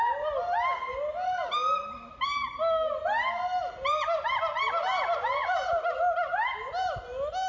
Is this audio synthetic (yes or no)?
no